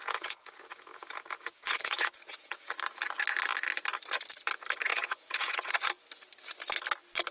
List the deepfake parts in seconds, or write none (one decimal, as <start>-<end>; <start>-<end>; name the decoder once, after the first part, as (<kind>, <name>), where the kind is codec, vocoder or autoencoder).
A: 0.0-2.7 (vocoder, Vocos); 4.9-5.7